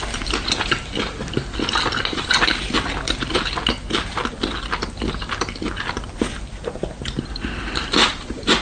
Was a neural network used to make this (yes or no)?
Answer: no